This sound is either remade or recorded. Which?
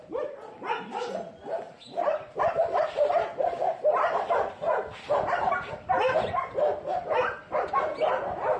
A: recorded